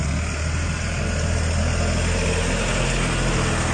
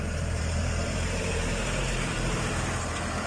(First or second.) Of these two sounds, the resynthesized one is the second